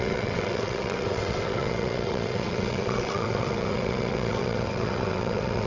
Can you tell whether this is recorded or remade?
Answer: remade